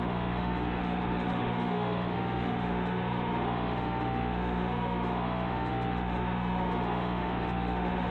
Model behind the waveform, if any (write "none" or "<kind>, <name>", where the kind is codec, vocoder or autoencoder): autoencoder, DAC-VAE